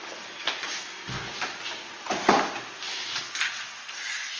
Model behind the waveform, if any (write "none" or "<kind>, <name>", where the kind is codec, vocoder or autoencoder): none